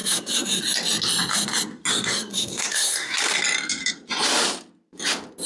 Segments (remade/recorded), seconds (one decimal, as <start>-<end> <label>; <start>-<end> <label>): 0.0-0.6 remade; 0.6-1.9 recorded; 1.9-3.1 remade; 3.1-5.5 recorded